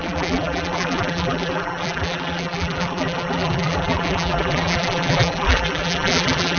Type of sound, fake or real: fake